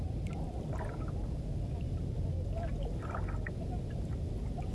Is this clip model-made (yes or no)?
no